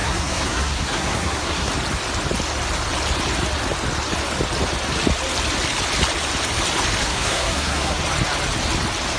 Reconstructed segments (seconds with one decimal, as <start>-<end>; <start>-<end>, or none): 0.0-1.7; 7.0-8.0